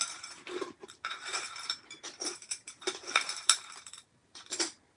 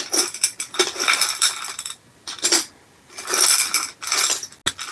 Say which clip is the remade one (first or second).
first